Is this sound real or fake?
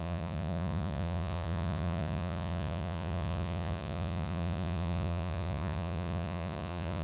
fake